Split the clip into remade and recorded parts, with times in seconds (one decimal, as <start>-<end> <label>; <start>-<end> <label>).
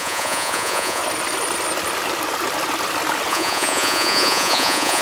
0.0-1.0 remade; 1.0-3.3 recorded; 3.3-5.0 remade